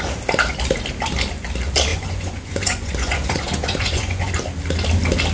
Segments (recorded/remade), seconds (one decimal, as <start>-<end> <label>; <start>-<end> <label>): 0.0-1.9 recorded; 1.9-4.3 remade; 4.3-5.3 recorded

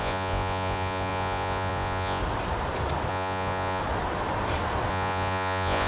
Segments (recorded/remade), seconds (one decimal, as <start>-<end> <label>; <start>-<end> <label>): 0.0-2.2 remade; 2.2-3.1 recorded; 3.1-3.8 remade; 3.8-4.9 recorded; 4.9-5.9 remade

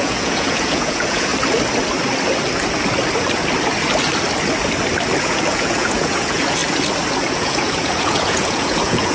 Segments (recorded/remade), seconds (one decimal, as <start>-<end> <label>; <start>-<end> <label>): 0.0-1.3 remade; 1.3-5.2 recorded; 5.2-6.6 remade; 6.6-7.3 recorded; 7.3-9.1 remade

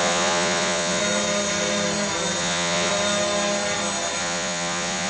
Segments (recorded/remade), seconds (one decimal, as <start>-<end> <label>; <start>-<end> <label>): 0.0-1.0 remade; 1.0-2.4 recorded; 2.4-2.9 remade; 2.9-4.2 recorded; 4.2-5.1 remade

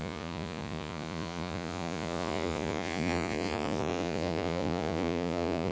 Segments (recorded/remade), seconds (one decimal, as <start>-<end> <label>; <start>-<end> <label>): 0.0-5.7 remade